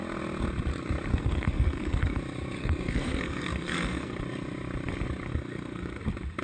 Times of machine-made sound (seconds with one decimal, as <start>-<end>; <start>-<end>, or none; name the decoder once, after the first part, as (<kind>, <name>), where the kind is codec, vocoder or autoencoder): 1.1-2.2 (codec, SNAC); 2.6-4.2; 5.3-6.0